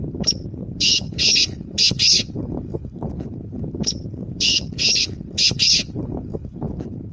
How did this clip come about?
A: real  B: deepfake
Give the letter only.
B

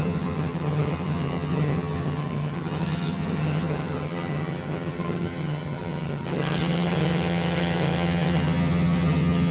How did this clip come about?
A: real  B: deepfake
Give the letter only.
B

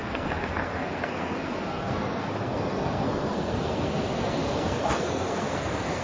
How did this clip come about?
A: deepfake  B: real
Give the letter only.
A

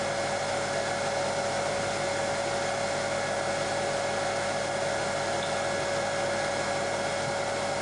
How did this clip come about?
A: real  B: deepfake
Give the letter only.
A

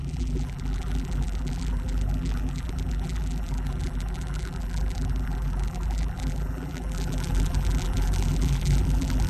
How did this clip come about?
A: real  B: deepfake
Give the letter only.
B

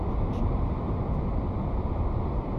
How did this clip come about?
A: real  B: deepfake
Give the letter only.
A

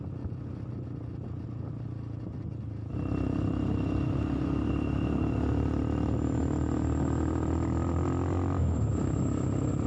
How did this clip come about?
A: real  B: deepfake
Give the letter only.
A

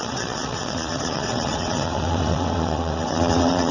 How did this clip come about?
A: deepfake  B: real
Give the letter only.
A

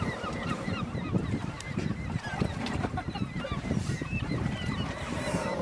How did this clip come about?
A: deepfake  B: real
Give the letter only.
A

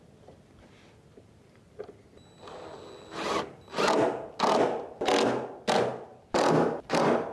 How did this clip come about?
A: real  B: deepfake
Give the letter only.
A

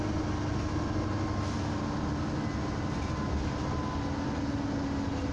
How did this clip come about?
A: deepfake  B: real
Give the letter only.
B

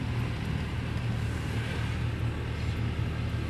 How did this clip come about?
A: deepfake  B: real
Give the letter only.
B